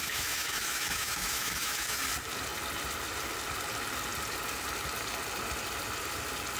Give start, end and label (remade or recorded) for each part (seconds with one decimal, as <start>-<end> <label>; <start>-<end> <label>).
0.0-2.0 remade; 2.0-6.6 recorded